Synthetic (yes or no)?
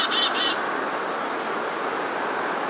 no